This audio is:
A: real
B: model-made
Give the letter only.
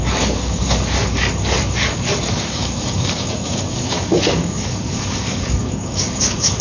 B